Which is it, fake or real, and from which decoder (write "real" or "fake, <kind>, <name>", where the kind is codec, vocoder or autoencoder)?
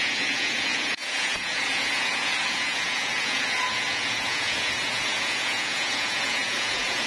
fake, vocoder, Vocos